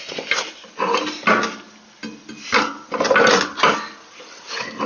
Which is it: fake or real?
real